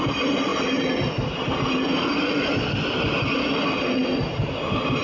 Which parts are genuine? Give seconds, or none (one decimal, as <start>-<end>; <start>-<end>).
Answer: 0.0-5.0